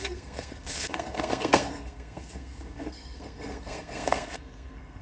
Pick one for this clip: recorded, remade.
remade